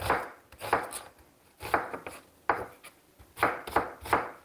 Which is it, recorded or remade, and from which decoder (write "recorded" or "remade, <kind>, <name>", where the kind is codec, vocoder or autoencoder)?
recorded